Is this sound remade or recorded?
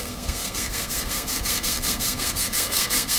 remade